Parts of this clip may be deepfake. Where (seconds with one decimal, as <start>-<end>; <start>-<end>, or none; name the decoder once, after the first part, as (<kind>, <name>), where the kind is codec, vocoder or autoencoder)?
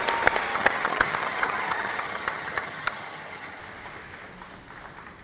0.5-3.6 (vocoder, HiFi-GAN)